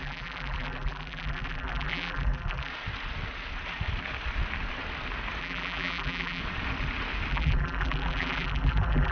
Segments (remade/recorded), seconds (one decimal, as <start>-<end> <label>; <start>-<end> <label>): 0.0-2.7 remade; 2.7-5.4 recorded; 5.4-6.4 remade; 6.4-7.3 recorded; 7.3-9.1 remade